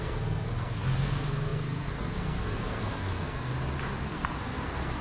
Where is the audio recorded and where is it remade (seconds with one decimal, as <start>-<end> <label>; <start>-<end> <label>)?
0.0-3.5 remade; 3.5-4.0 recorded; 4.0-5.0 remade